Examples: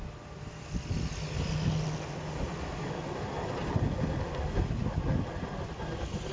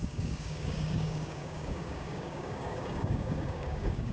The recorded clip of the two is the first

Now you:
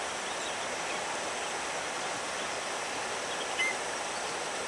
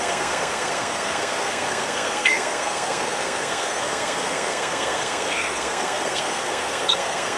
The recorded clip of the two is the first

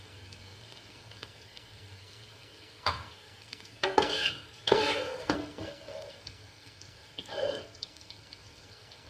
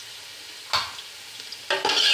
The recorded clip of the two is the second